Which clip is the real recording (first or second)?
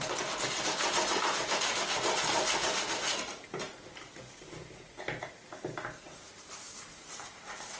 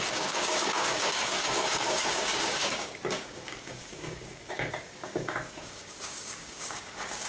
first